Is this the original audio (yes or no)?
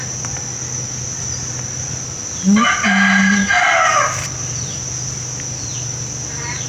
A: yes